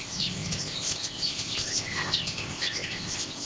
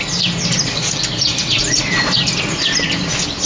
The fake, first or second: first